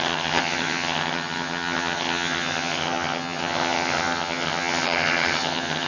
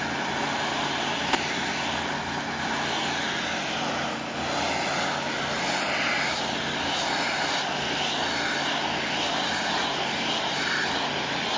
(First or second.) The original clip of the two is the second